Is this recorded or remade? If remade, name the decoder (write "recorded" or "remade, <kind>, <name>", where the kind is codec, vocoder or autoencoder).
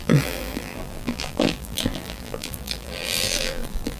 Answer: remade, vocoder, BigVGAN v2